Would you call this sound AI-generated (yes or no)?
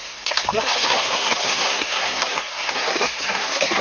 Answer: yes